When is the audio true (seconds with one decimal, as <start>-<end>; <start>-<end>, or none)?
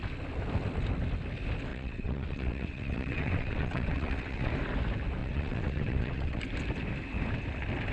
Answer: 0.0-1.7; 4.5-5.2; 6.4-7.9